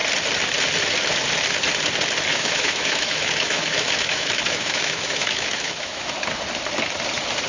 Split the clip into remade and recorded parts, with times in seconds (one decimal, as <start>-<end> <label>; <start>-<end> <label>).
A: 0.0-2.3 recorded; 2.3-6.1 remade; 6.1-7.5 recorded

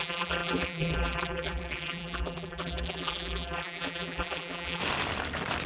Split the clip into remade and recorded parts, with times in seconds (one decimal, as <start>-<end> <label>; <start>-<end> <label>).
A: 0.0-4.8 remade; 4.8-5.7 recorded

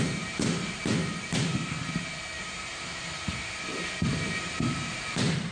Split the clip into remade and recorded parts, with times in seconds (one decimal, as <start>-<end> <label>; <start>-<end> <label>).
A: 0.0-1.0 remade; 1.0-2.4 recorded; 2.4-5.5 remade

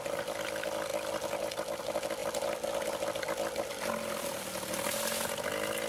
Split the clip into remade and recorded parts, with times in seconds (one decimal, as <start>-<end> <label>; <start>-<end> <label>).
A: 0.0-5.9 recorded